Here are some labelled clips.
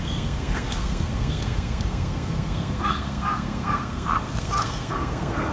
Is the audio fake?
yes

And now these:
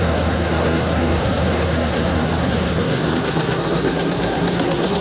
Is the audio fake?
yes